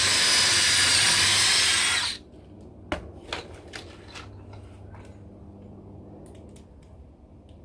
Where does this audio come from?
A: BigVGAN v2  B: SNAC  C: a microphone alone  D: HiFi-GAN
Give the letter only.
C